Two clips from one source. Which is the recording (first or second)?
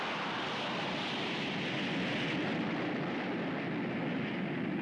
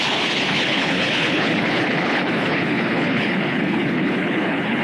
first